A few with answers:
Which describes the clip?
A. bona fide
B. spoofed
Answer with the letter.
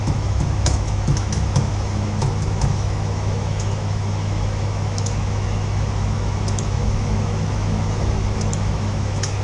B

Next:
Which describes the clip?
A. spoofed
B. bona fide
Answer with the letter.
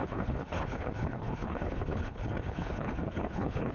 A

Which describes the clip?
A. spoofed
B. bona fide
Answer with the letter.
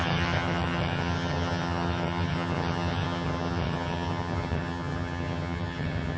A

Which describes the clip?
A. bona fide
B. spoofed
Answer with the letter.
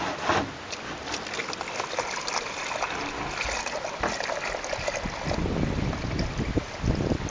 A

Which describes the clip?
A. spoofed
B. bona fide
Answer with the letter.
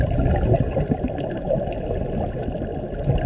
B